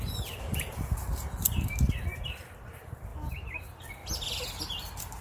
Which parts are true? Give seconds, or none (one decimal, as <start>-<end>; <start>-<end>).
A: 0.0-5.2